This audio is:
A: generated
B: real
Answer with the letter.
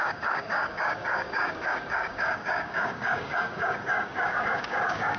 A